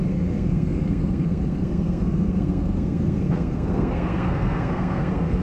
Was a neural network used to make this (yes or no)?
yes